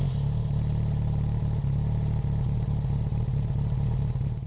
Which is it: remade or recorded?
recorded